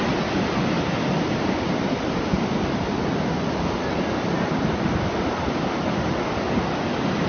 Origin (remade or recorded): recorded